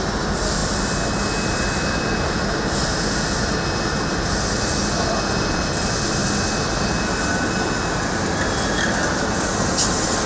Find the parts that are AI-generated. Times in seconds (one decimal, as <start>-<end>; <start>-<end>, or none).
none